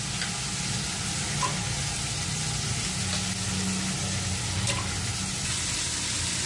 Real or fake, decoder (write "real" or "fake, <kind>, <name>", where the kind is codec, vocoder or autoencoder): real